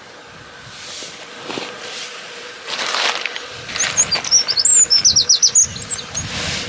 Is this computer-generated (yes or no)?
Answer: no